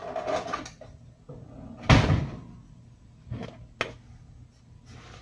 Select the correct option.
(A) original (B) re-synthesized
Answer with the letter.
A